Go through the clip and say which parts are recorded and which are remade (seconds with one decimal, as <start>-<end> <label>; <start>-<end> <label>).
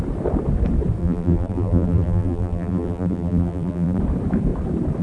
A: 0.0-1.0 recorded; 1.0-4.0 remade; 4.0-5.0 recorded